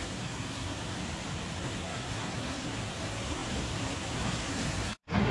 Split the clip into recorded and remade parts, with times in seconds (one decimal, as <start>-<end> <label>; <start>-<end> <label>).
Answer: 0.0-1.0 remade; 1.0-1.6 recorded; 1.6-5.3 remade